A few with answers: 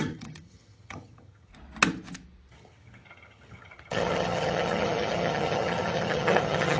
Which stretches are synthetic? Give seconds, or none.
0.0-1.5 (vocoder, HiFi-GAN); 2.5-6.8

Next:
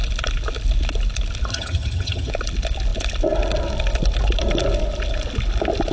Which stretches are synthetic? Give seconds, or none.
1.5-2.3 (vocoder, HiFi-GAN)

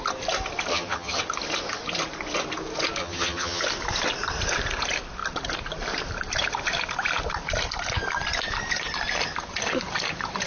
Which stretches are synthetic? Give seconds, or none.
0.7-1.2 (vocoder, HiFi-GAN); 3.0-3.6

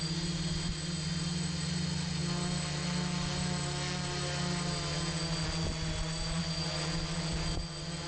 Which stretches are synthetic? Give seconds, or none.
none

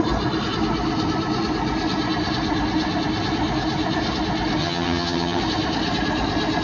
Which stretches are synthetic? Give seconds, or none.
4.6-5.4 (vocoder, HiFi-GAN)

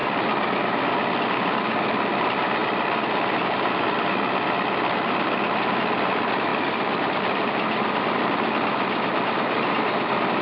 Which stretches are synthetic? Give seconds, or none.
none

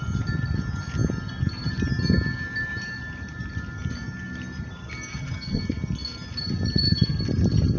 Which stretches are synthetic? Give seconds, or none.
5.1-5.6 (vocoder, HiFi-GAN)

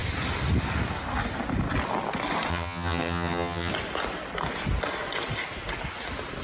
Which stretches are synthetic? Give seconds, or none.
2.5-3.7 (vocoder, HiFi-GAN)